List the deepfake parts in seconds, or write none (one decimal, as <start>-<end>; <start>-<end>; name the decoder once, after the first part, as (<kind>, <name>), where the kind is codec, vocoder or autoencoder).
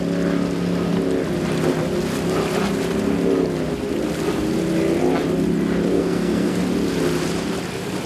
5.9-6.6 (codec, SNAC)